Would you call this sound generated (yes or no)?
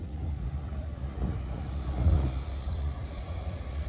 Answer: yes